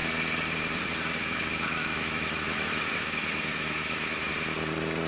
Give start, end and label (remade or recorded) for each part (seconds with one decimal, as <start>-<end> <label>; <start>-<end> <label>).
0.0-1.2 recorded; 1.2-4.3 remade; 4.3-5.1 recorded